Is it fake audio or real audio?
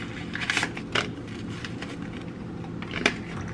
real